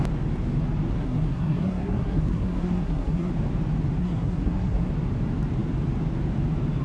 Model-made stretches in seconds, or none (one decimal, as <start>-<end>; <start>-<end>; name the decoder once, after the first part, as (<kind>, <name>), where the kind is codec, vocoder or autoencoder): 0.9-3.3 (codec, SNAC); 4.0-4.9